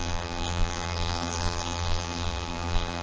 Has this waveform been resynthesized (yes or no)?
yes